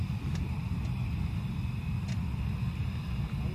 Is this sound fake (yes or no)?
no